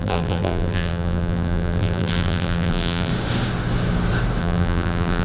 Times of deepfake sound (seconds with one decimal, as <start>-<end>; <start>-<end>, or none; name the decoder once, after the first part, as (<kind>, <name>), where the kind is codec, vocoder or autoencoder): 0.0-3.1 (vocoder, BigVGAN v2); 4.4-5.2